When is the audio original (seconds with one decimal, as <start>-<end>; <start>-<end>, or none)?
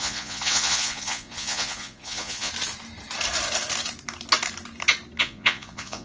2.5-5.2